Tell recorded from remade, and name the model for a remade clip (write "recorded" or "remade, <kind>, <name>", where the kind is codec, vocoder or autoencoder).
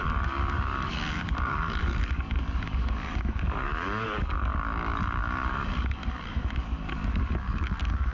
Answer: remade, codec, DAC